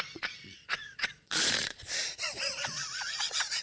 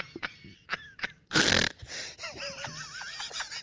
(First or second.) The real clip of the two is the second